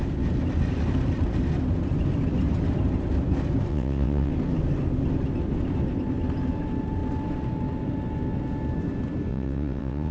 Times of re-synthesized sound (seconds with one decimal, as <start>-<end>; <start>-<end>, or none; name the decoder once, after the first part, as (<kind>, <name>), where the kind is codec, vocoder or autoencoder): 3.7-4.3 (vocoder, WaveNeXt); 9.3-10.1